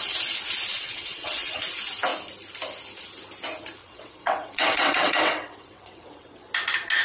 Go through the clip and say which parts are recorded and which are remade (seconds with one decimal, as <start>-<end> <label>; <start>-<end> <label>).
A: 0.0-0.7 recorded; 0.7-1.6 remade; 1.6-3.8 recorded; 3.8-6.5 remade; 6.5-7.0 recorded